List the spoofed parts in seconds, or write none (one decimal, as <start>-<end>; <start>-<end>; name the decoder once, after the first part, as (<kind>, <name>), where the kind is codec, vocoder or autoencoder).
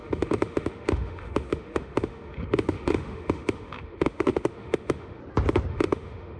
0.0-5.2 (autoencoder, DAC-VAE); 5.7-6.4